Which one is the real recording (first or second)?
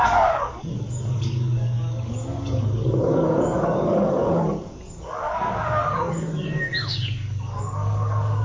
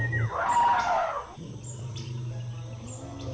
second